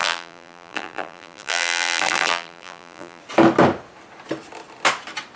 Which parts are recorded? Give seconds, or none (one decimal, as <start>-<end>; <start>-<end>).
3.2-5.4